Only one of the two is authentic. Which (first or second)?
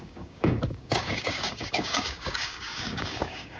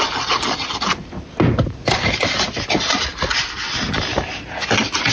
second